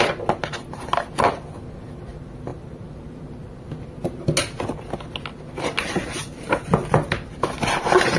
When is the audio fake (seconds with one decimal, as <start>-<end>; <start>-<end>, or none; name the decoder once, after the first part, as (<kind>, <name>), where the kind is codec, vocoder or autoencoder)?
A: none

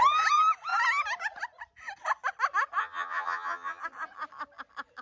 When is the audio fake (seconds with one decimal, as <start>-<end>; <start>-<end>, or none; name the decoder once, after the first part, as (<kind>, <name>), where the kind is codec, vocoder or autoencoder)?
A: 2.8-3.8 (vocoder, HiFi-GAN)

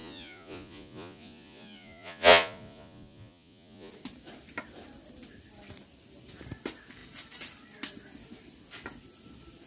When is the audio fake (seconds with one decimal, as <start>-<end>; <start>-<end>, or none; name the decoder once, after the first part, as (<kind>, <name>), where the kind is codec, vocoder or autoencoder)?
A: 0.0-3.9 (vocoder, Vocos)